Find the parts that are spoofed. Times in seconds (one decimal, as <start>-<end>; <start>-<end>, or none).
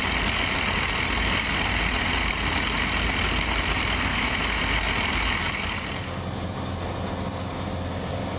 4.1-4.6